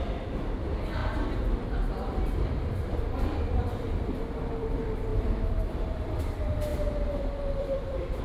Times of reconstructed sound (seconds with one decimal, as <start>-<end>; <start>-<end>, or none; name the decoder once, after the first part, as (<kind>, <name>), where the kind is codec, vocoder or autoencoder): 0.0-1.0 (vocoder, BigVGAN v2); 2.1-8.2